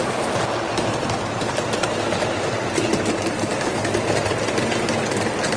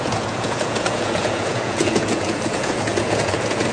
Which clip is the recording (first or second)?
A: first